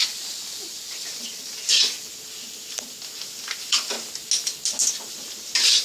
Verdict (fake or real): real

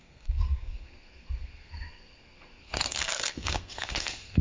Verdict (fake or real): fake